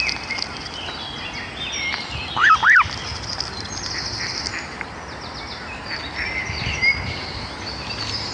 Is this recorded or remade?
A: recorded